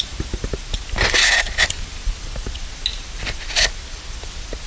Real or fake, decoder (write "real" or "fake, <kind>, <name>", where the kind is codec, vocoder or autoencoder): real